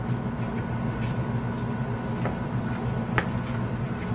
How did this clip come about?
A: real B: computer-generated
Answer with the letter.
A